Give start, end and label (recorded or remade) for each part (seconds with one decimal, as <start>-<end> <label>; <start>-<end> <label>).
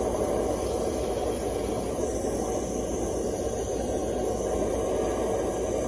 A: 0.0-5.9 recorded